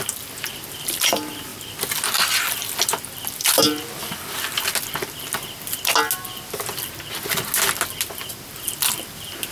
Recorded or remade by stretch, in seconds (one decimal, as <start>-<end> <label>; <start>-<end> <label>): 0.0-9.5 recorded